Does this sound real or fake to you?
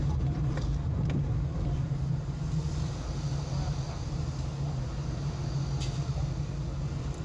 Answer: real